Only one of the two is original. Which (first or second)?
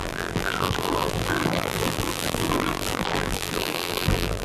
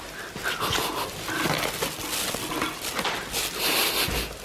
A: second